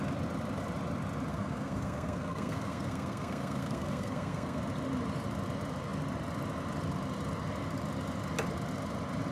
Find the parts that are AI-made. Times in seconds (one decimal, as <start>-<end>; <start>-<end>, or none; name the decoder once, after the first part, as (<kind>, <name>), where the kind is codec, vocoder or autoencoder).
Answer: 1.3-4.6 (codec, SNAC)